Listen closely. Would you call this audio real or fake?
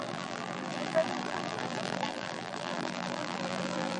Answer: fake